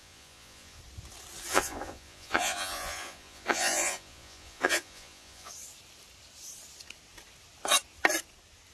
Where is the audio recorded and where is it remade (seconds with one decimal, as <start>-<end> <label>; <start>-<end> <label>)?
0.0-0.8 remade; 0.8-1.5 recorded; 1.5-5.5 remade; 5.5-8.7 recorded